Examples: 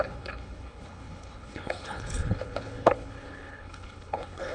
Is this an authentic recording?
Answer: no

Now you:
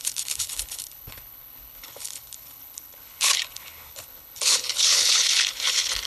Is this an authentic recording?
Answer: no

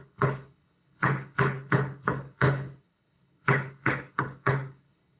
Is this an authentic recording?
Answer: no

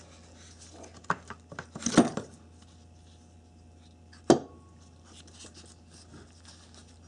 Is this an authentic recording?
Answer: yes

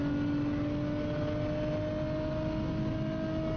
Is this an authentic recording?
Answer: yes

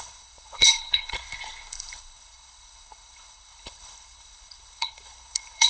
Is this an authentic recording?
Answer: no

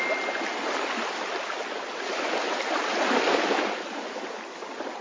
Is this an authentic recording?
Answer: yes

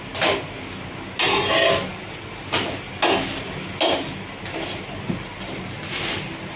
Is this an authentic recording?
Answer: yes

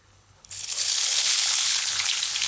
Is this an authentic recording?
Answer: no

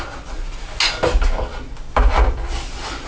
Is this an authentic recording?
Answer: yes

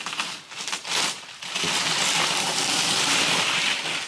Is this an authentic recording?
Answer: yes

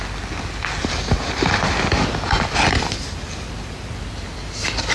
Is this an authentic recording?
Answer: yes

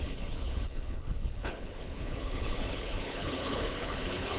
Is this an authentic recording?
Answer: no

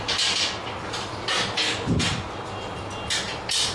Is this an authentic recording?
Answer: yes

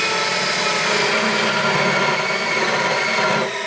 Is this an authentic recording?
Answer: yes